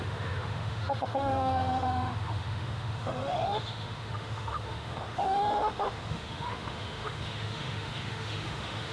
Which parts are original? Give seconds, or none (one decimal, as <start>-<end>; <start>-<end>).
none